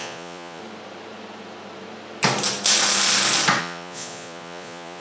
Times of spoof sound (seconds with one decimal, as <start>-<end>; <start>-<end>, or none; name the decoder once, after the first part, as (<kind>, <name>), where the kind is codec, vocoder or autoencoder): 0.0-0.6 (vocoder, Vocos); 3.6-5.0